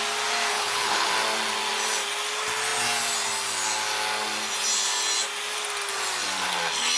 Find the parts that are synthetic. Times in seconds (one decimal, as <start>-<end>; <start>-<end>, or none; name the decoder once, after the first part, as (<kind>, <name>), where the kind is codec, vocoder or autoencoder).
0.5-1.1 (codec, HILCodec)